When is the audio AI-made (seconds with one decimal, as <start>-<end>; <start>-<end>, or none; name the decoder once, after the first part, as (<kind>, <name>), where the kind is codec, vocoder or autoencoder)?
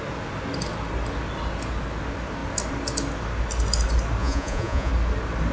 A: 4.2-4.9 (vocoder, Vocos)